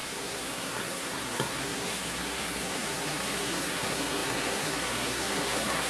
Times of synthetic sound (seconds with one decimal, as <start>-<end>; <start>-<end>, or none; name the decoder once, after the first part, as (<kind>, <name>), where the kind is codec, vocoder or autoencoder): 0.0-5.9 (codec, SNAC)